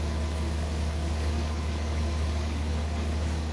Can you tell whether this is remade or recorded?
remade